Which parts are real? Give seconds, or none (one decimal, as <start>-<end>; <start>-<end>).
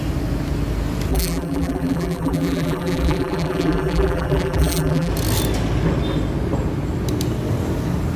0.0-1.1; 5.1-8.2